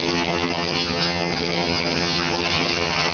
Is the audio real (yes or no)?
no